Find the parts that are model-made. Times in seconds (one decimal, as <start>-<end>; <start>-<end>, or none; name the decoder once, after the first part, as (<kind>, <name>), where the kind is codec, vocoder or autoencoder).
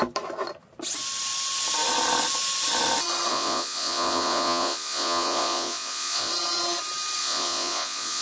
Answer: 3.3-6.3 (vocoder, Vocos); 7.2-8.2